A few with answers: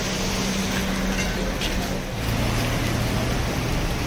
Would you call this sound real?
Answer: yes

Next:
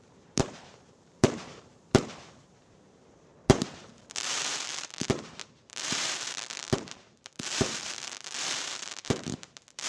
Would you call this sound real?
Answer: no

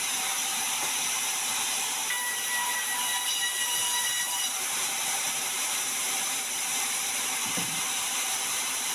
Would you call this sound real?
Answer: no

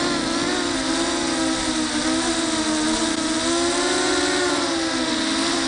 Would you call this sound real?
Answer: yes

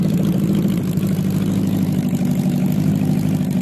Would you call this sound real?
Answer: yes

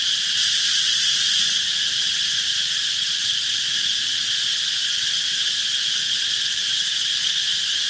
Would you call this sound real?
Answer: no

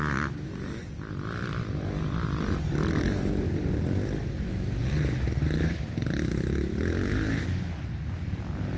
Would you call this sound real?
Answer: yes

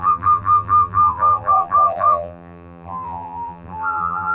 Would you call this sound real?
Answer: no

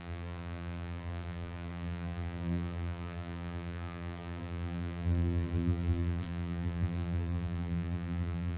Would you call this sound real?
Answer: no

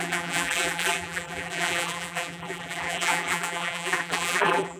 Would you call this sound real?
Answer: no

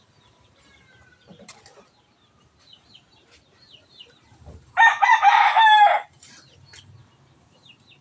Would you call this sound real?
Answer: no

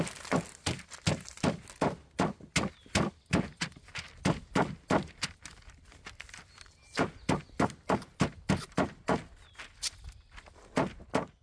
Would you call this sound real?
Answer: yes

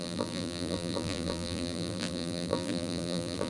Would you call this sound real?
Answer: no